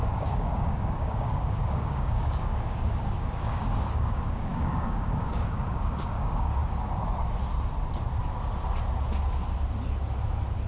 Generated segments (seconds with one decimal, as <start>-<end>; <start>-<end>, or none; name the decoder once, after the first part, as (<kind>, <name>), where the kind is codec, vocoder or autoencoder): 0.0-6.6 (codec, DAC)